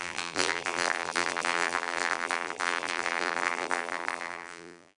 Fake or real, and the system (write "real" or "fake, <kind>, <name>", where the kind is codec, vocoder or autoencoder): fake, vocoder, BigVGAN v2